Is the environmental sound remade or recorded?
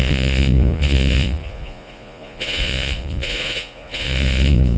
remade